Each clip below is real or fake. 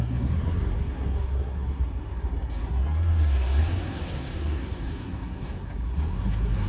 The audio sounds fake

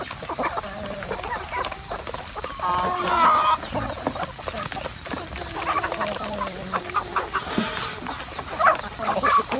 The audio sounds real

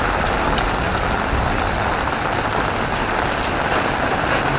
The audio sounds real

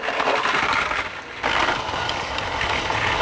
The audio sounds real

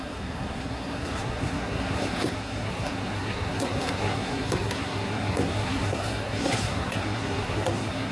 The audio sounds fake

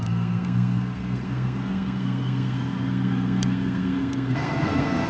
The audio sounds fake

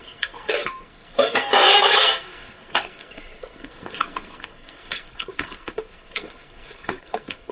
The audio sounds fake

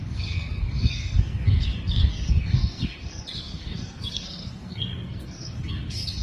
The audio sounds fake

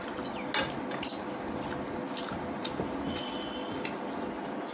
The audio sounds real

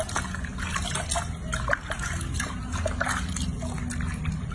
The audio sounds real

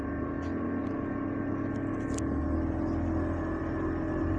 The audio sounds real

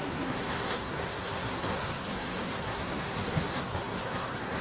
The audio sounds fake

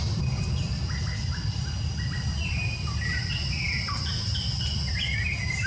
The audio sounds real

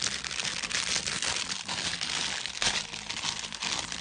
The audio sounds real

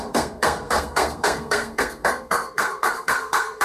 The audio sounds fake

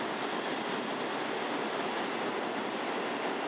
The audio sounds real